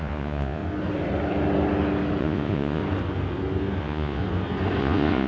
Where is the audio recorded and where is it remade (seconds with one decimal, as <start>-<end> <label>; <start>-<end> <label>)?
0.0-0.6 remade; 0.6-2.2 recorded; 2.2-2.8 remade; 2.8-3.8 recorded; 3.8-4.2 remade; 4.2-4.8 recorded; 4.8-5.3 remade